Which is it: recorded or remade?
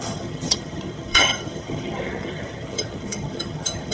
remade